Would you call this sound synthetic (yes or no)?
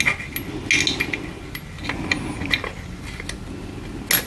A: no